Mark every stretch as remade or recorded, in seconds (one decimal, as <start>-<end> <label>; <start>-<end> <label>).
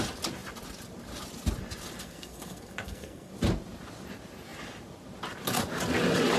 0.0-2.0 recorded; 2.0-3.3 remade; 3.3-6.4 recorded